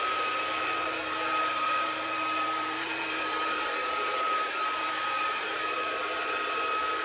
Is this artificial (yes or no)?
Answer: yes